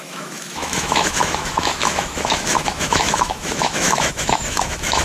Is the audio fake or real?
fake